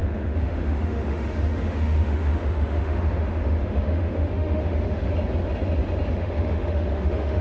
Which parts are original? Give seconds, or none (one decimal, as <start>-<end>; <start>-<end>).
5.1-6.1